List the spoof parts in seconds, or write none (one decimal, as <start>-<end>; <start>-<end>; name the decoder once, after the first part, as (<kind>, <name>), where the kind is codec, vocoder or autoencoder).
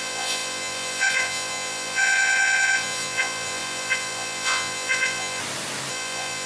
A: 0.0-5.4 (vocoder, Vocos); 5.9-6.5